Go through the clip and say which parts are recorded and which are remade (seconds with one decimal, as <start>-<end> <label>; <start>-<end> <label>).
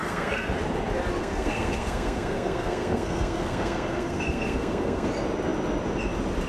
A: 0.0-0.5 remade; 0.5-1.2 recorded; 1.2-5.1 remade; 5.1-6.5 recorded